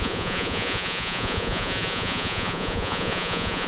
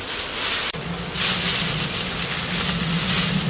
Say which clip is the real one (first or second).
second